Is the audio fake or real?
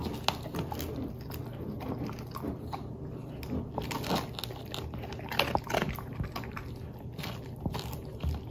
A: real